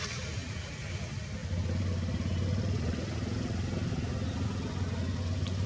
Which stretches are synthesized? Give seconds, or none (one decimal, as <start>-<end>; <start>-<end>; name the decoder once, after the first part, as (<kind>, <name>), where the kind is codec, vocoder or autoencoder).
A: 0.4-0.9 (vocoder, Vocos)